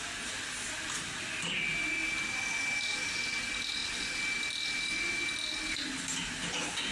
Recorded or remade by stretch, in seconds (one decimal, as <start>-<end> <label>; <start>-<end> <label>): 0.0-6.9 recorded